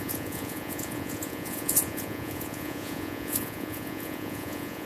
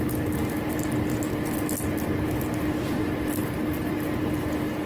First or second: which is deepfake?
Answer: first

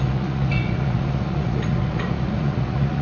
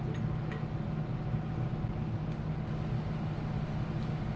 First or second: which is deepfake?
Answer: first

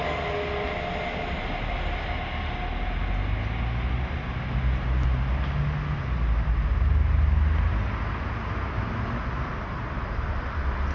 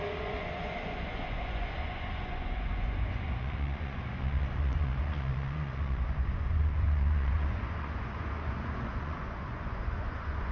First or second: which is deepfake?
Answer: second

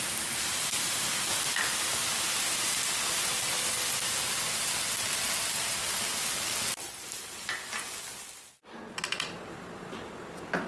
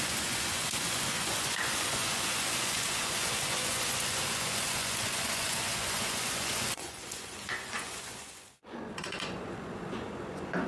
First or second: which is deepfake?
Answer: second